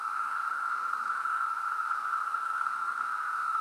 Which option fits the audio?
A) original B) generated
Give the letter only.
B